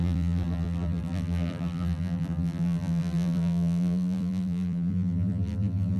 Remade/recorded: remade